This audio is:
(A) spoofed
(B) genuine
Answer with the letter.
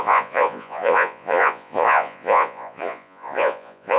A